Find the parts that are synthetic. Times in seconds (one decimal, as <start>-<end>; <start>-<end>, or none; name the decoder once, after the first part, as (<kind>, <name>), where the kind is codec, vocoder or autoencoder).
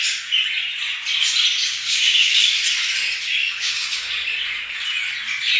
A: 1.6-2.5 (codec, DAC); 3.4-4.1